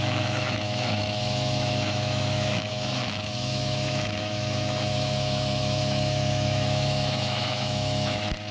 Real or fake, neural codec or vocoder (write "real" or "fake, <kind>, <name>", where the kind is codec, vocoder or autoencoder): fake, autoencoder, DAC-VAE